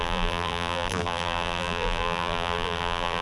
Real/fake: fake